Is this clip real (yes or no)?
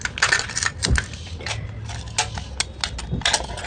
yes